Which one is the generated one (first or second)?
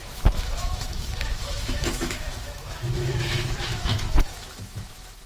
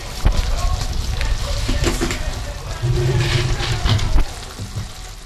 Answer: first